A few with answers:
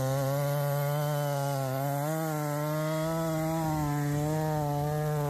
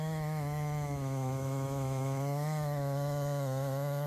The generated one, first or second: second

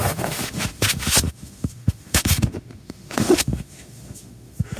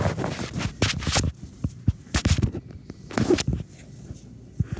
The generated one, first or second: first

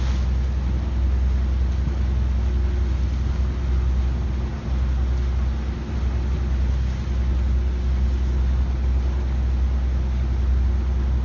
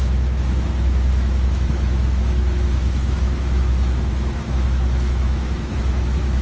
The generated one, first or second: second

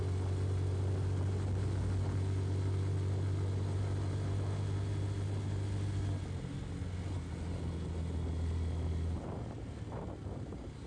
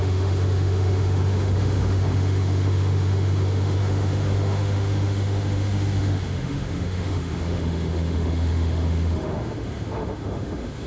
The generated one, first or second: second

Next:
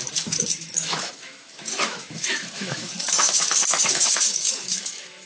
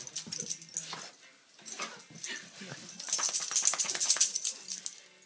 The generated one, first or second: first